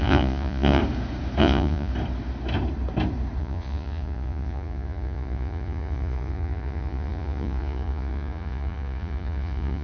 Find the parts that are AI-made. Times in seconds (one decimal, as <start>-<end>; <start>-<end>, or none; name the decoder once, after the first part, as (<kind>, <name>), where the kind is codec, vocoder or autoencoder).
0.0-0.8 (vocoder, Vocos); 1.4-1.9; 3.4-9.8